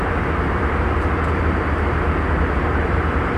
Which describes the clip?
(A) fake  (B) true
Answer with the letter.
A